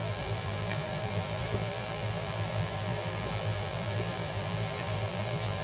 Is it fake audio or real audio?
fake